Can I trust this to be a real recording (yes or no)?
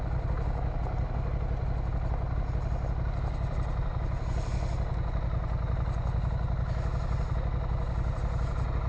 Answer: yes